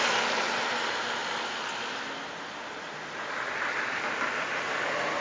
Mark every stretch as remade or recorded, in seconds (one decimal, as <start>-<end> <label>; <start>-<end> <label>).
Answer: 0.0-5.2 recorded